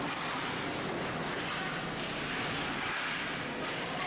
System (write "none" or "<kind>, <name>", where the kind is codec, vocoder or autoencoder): none